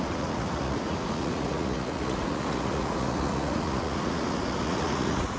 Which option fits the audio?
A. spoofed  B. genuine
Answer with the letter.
A